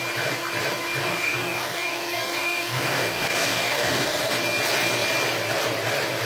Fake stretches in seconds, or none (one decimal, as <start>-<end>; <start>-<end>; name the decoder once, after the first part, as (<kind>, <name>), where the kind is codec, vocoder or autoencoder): 1.0-4.3 (codec, DAC)